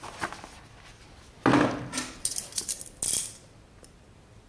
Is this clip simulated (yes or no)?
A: no